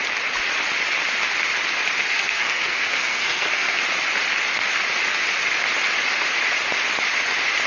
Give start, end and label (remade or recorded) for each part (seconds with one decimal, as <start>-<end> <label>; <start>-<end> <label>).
0.0-2.0 recorded; 2.0-3.8 remade; 3.8-7.7 recorded

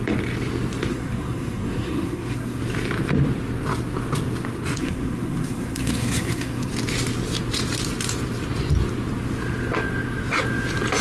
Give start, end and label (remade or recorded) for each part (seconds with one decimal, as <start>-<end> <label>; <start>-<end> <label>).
0.0-0.9 recorded; 0.9-2.6 remade; 2.6-4.8 recorded; 4.8-6.7 remade; 6.7-11.0 recorded

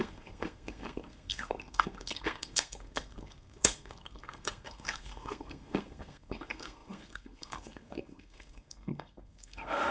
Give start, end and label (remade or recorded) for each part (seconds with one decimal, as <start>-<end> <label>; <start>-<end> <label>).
0.0-9.9 remade

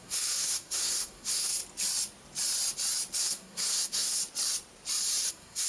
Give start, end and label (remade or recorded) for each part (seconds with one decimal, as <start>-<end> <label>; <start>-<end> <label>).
0.0-1.6 remade; 1.6-3.2 recorded; 3.2-4.2 remade; 4.2-5.3 recorded; 5.3-5.7 remade

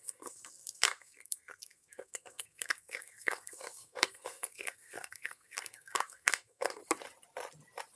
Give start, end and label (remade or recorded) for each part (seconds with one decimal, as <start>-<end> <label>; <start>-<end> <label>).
0.0-6.8 remade; 6.8-8.0 recorded

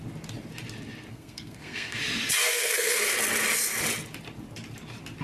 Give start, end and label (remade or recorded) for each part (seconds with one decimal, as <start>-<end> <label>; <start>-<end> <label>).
0.0-1.1 recorded; 1.1-2.0 remade; 2.0-2.5 recorded; 2.5-3.0 remade; 3.0-5.2 recorded